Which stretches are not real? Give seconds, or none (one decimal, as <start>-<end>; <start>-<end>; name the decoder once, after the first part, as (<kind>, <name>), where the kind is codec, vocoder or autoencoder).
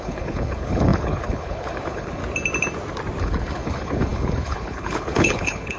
0.0-2.2 (codec, HILCodec); 3.2-5.8